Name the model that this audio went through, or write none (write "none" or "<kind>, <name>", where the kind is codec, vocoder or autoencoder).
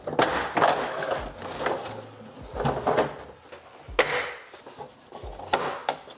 none